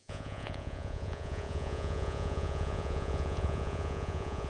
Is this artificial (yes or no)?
yes